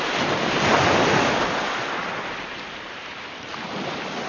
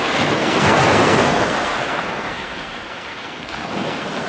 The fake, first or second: second